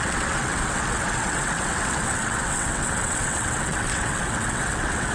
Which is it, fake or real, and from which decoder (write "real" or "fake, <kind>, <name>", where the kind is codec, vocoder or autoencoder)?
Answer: fake, vocoder, WaveNeXt